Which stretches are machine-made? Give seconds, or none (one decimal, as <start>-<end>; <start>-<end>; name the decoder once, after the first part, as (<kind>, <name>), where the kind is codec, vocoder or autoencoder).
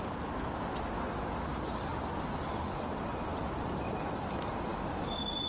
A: none